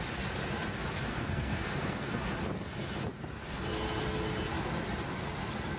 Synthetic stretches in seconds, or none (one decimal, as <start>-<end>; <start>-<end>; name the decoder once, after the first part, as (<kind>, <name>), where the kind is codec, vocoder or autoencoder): 1.1-2.2 (codec, SNAC)